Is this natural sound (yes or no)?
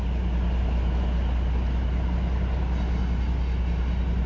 yes